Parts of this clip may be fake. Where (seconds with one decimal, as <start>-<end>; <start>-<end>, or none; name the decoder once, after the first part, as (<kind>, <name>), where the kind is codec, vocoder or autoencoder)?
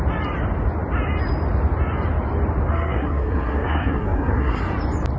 2.7-4.6 (codec, SNAC)